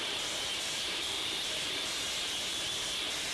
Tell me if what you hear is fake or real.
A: fake